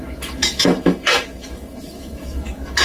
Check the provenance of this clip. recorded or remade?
remade